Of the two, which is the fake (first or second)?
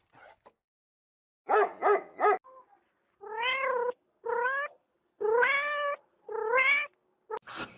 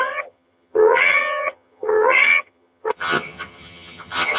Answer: second